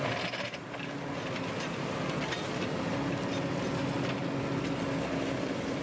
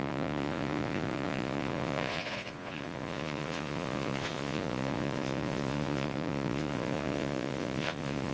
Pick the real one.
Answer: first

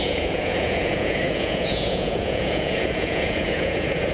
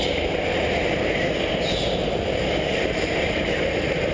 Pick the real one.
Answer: second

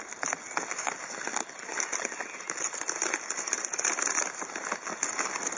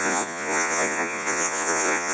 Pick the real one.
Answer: first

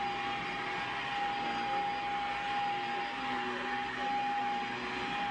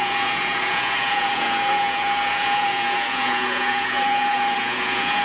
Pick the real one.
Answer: first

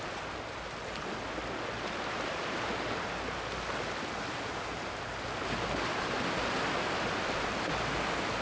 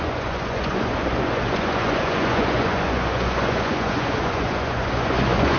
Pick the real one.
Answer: first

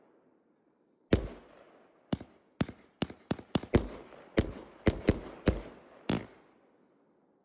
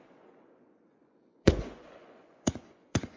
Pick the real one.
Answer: first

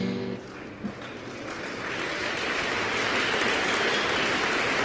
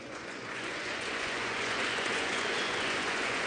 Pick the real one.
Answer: first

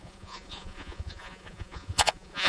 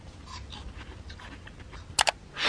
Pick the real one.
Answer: second